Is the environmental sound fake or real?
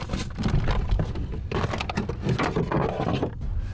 real